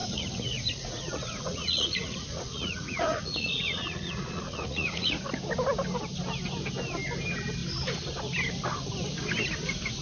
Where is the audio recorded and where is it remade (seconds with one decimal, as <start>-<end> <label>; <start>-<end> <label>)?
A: 0.0-5.2 remade; 5.2-10.0 recorded